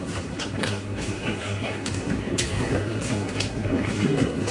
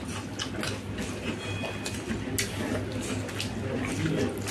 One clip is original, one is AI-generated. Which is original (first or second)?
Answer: second